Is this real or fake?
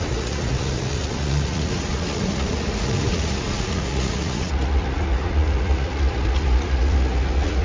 fake